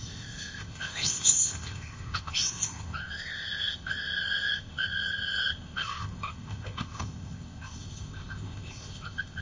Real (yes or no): no